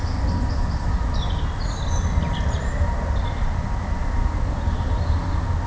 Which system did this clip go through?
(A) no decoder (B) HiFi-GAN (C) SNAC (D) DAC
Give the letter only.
A